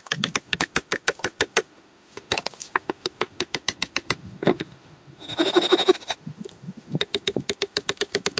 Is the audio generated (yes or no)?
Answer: yes